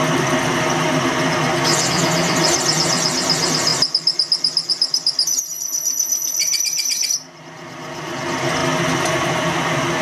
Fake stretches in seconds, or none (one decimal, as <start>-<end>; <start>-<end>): none